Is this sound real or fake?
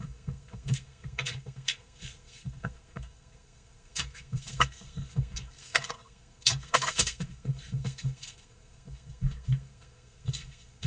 fake